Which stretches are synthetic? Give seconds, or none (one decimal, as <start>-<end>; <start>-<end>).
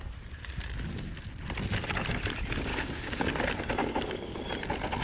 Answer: 2.7-3.3; 3.8-4.5